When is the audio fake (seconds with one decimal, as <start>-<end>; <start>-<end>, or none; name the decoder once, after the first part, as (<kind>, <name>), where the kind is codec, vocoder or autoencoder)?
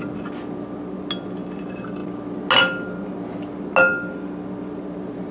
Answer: none